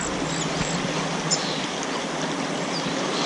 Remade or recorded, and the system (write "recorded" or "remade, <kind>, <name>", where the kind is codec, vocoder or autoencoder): recorded